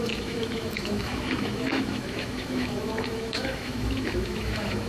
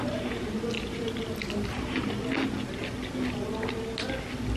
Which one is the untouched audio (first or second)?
second